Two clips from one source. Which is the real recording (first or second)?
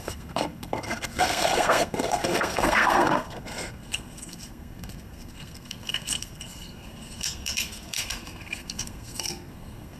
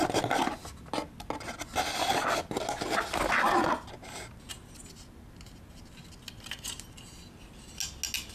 second